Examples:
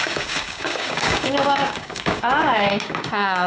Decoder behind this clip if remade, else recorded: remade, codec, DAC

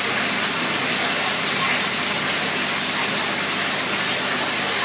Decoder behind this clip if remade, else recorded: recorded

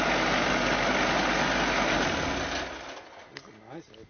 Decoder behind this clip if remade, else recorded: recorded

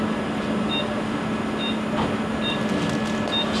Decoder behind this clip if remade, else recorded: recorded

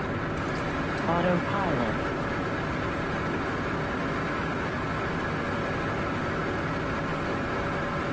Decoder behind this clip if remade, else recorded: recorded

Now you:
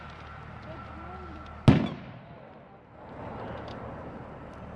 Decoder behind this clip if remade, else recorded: recorded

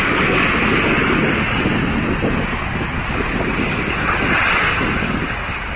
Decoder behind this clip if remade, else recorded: recorded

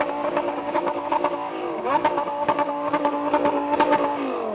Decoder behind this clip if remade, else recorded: remade, codec, DAC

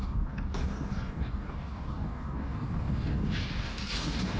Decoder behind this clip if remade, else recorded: remade, codec, DAC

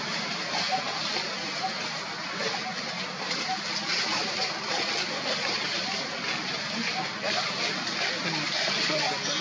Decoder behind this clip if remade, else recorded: recorded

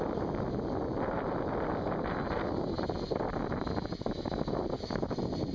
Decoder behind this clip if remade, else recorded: recorded